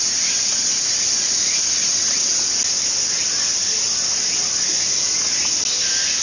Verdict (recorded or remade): recorded